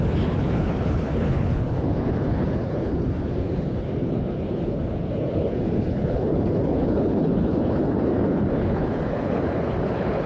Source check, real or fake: fake